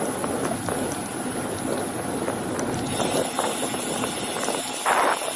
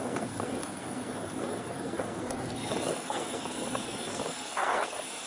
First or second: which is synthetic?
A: second